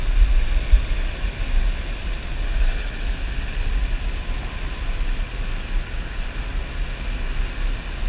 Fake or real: real